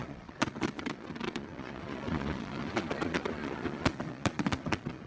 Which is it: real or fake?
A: fake